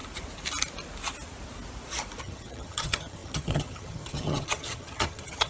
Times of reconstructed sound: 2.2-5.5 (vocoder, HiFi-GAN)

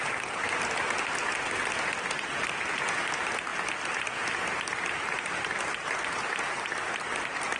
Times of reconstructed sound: none

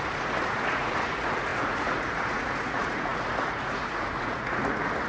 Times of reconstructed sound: 0.0-5.1 (vocoder, Vocos)

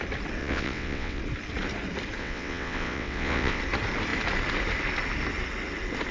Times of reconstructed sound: 0.4-1.2 (vocoder, WaveNeXt); 2.2-3.6

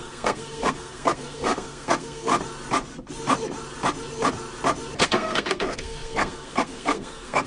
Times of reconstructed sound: 0.0-2.3 (codec, SNAC); 5.0-7.5

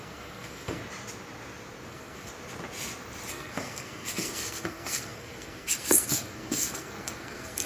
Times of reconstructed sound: 0.0-0.8 (codec, SNAC); 1.9-2.3; 3.3-7.7